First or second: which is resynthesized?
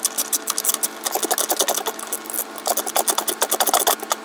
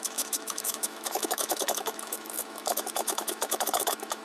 second